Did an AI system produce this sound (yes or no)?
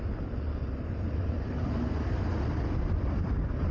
no